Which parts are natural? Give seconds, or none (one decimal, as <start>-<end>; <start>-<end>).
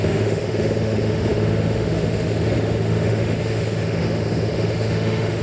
none